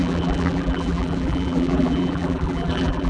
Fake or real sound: fake